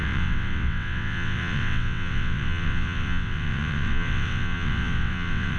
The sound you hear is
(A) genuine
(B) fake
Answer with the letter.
B